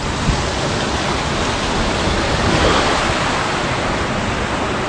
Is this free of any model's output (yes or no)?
yes